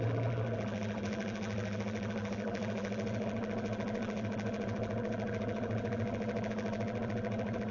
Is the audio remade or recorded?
remade